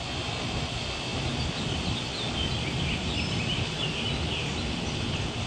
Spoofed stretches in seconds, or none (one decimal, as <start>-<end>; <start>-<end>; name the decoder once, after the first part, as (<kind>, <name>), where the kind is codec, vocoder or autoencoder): none